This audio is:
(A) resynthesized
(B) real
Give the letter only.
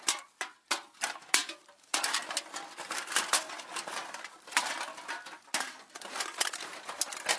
B